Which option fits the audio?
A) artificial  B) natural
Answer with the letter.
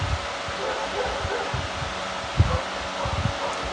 B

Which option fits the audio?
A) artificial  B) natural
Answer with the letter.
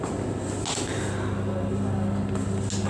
B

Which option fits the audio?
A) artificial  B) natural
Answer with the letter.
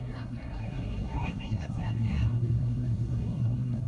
A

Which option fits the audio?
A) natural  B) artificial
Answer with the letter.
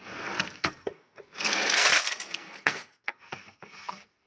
B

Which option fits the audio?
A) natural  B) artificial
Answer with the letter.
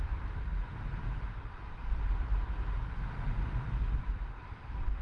A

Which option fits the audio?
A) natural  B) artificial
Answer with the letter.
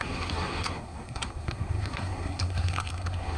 B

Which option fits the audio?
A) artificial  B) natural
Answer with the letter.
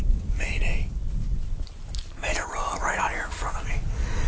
B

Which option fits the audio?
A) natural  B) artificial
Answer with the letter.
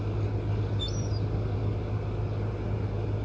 A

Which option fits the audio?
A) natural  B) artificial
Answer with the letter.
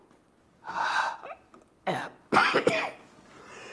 A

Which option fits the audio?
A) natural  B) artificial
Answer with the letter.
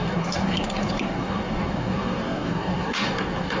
B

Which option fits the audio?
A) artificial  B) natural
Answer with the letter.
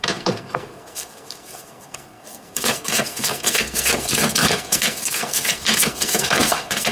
A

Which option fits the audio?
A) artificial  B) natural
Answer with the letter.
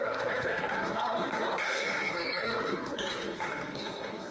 A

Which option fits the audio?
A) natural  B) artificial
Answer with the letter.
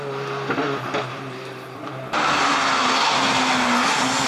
A